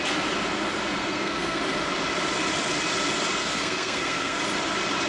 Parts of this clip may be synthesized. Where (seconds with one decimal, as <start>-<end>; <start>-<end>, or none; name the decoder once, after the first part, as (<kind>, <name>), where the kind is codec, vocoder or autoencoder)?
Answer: 1.0-1.6 (codec, SNAC); 3.4-4.4